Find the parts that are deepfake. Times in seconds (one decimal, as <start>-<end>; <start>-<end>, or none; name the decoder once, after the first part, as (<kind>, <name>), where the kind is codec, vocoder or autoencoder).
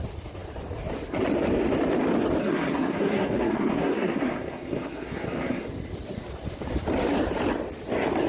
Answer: 2.4-5.7 (codec, SNAC)